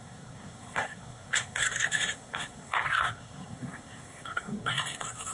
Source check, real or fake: fake